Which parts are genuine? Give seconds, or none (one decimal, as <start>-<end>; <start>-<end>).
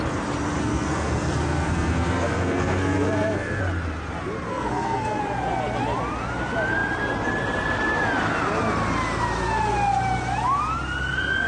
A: 0.0-0.6; 3.6-4.5; 5.2-11.5